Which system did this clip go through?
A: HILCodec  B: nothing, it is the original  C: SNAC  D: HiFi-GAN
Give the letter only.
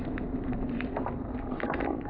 B